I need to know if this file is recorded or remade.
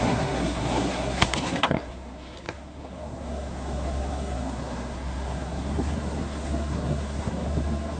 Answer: remade